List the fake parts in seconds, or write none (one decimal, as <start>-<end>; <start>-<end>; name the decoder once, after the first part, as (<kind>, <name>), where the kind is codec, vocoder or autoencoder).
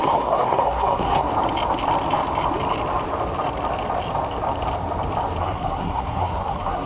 0.0-1.3 (codec, SNAC); 5.4-6.9